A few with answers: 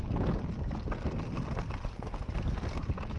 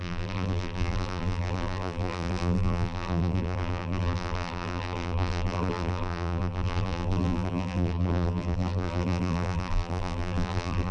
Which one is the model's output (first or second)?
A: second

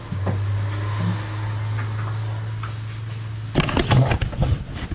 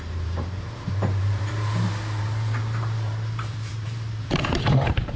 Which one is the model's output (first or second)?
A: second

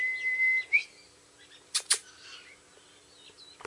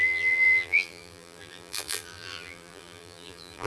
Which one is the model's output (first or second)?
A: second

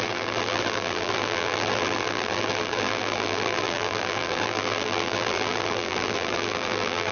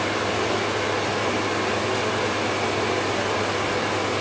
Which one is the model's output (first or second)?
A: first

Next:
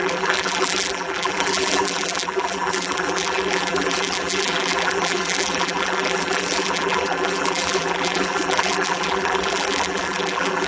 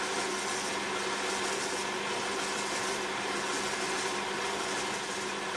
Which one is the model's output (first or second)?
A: first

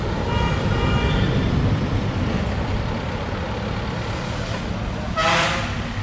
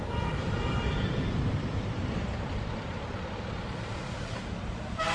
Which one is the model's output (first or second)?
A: second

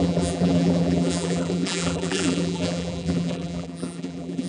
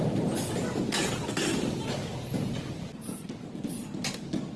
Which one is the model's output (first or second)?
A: first